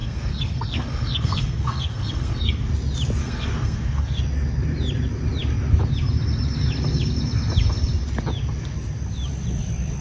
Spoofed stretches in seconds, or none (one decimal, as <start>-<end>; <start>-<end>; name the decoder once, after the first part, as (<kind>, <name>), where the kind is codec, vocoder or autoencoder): 0.0-2.7 (codec, SNAC); 3.2-4.2